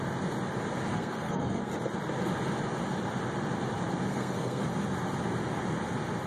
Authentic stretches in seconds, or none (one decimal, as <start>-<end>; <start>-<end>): 0.0-0.9; 1.7-4.1; 4.6-6.3